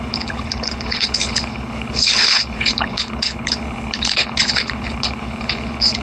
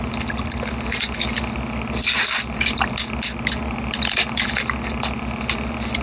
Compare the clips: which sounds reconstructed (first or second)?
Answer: first